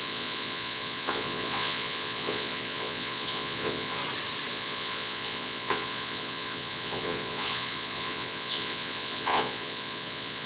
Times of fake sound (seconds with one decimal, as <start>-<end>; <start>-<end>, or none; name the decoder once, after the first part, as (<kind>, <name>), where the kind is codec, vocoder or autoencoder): 0.0-4.0 (vocoder, Vocos); 4.5-10.5